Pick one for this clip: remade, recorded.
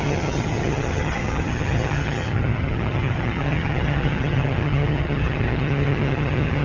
remade